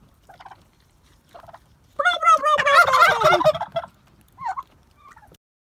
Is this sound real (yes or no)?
yes